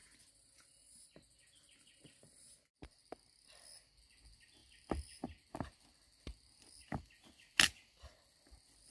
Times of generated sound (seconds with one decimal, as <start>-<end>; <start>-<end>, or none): none